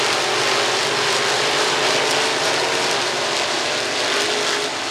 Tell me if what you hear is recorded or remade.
recorded